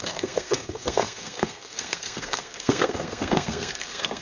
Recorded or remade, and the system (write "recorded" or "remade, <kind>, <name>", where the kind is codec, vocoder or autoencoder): remade, codec, SNAC